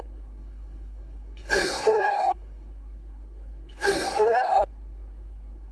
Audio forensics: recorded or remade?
remade